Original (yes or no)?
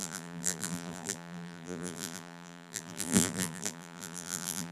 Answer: no